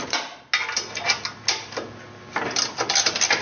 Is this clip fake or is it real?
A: real